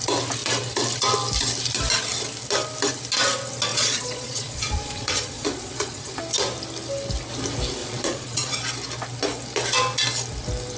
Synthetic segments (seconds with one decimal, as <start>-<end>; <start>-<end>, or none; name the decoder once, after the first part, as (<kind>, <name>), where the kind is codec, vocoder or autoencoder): 3.7-6.2 (vocoder, Vocos); 7.8-8.5